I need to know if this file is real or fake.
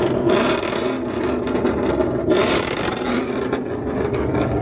real